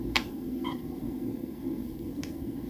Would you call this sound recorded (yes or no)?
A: no